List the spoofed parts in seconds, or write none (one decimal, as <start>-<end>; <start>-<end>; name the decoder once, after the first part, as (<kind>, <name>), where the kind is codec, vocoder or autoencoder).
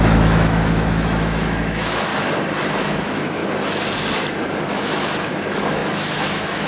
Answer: 0.0-2.1 (autoencoder, DAC-VAE); 2.8-3.4; 4.7-6.7